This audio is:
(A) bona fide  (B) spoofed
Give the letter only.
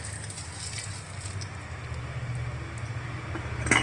A